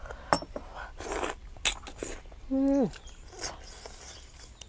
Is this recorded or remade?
recorded